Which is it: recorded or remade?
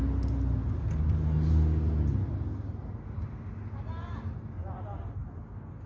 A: recorded